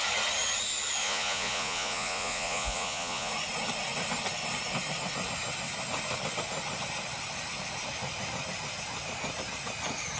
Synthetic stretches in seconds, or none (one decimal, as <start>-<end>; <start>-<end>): 1.0-3.3